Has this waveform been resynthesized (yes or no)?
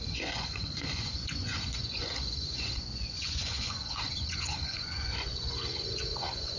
yes